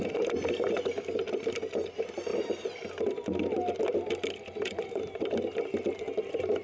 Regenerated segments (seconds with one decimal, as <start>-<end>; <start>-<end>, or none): none